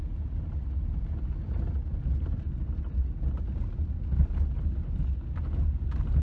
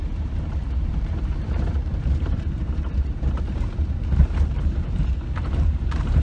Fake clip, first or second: second